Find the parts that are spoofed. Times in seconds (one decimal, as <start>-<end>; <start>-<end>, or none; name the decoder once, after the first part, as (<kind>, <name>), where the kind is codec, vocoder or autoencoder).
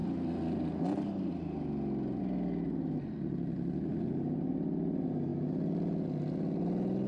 none